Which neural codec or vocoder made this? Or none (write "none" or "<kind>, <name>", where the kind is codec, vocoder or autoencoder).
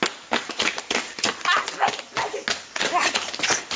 none